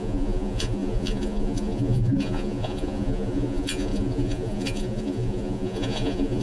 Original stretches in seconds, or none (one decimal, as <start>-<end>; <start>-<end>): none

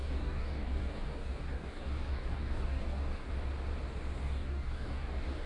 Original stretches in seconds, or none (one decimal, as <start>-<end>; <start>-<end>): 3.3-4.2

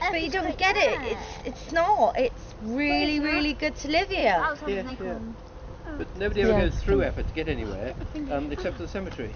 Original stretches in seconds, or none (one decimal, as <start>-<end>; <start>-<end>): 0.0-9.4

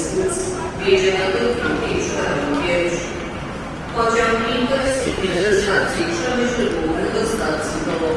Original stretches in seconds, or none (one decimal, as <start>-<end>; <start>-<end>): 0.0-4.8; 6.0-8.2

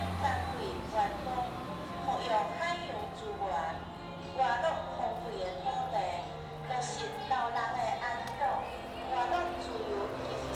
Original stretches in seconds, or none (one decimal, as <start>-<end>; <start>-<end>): 0.0-10.5

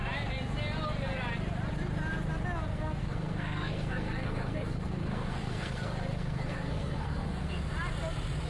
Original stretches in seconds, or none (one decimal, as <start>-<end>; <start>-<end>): 0.0-2.7; 7.6-8.5

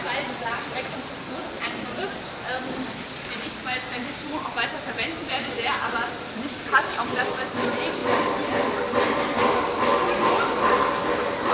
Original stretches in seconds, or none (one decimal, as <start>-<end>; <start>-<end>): 8.0-8.7